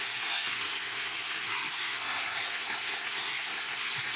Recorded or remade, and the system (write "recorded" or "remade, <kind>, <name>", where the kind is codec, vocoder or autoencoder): remade, codec, SNAC